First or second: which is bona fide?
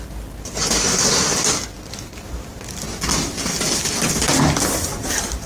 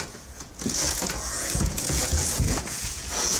first